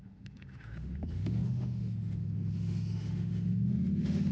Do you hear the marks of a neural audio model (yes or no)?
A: yes